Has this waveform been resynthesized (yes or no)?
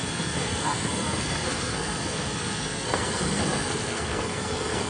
yes